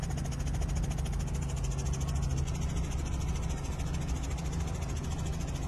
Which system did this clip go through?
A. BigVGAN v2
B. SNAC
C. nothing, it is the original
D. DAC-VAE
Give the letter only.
C